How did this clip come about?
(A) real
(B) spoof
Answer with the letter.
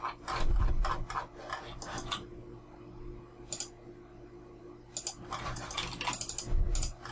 A